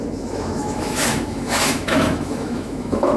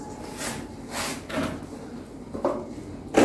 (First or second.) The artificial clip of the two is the first